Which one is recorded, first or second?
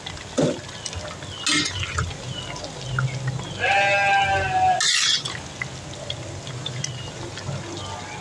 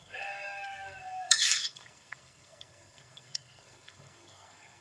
first